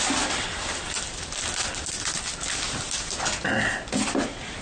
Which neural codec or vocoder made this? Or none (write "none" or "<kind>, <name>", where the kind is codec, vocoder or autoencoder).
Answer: none